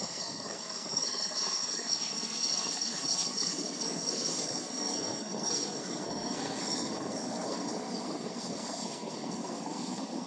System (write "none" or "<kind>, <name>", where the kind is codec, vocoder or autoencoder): codec, SNAC